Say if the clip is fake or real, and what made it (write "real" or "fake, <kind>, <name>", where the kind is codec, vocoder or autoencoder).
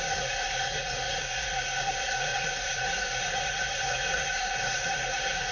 fake, codec, SNAC